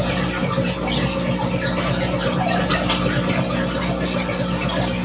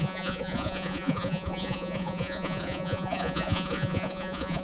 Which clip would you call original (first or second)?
first